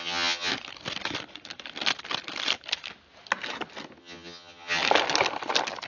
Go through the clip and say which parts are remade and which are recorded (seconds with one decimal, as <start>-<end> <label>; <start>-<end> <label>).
0.0-0.5 remade; 0.5-4.0 recorded; 4.0-4.8 remade; 4.8-5.9 recorded